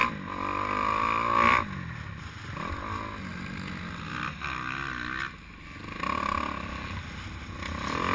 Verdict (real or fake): real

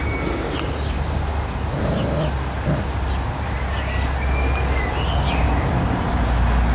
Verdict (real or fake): real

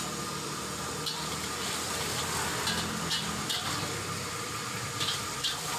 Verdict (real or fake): real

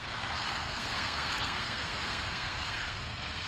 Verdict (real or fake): fake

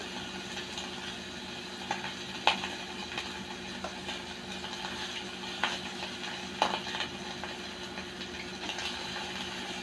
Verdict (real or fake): real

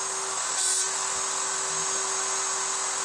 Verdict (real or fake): real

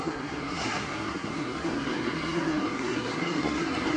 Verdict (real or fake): fake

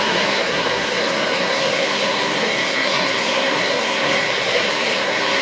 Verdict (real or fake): fake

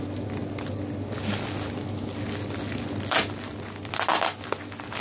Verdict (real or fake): real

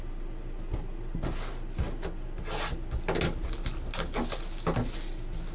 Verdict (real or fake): real